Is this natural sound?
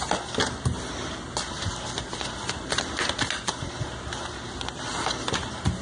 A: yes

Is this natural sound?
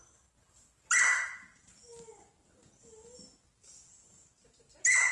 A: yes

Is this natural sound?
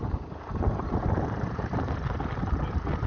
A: yes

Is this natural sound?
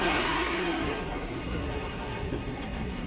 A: no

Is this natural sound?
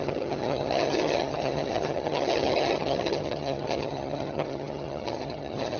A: no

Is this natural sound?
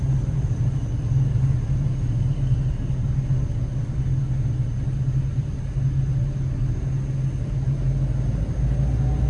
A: yes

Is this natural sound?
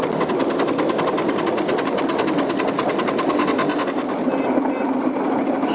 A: yes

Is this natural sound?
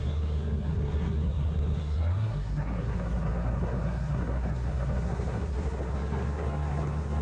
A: no